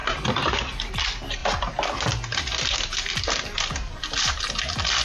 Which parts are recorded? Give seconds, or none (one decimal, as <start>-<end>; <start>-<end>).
0.9-1.4; 4.4-5.0